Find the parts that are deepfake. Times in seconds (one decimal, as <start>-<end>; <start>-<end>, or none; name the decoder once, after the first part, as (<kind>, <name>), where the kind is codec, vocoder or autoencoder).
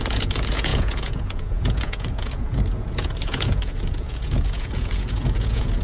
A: 0.0-5.8 (vocoder, Vocos)